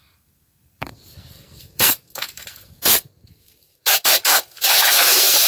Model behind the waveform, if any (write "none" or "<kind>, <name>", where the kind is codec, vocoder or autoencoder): codec, SNAC